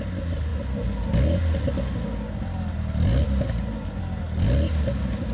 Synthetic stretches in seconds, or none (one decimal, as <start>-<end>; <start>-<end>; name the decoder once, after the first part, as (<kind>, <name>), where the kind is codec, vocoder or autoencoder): none